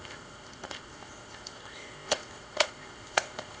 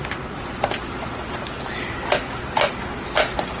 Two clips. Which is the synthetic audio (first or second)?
first